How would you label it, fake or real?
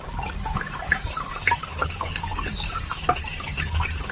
fake